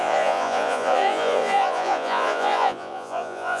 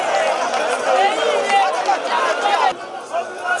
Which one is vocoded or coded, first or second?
first